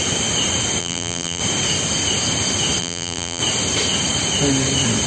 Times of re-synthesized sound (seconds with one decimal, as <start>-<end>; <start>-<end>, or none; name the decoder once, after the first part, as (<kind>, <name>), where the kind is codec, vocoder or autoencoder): 0.8-1.4 (vocoder, BigVGAN v2); 2.8-3.4